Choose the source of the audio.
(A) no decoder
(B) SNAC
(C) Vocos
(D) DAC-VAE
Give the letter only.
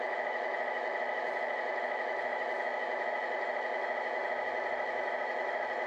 D